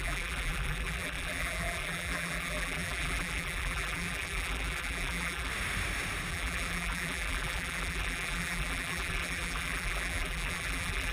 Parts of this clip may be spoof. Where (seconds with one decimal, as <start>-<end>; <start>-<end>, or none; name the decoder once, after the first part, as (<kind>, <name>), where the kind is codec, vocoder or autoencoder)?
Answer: 0.0-5.5 (vocoder, BigVGAN v2); 6.3-11.1